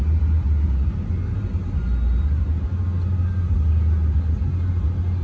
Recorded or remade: recorded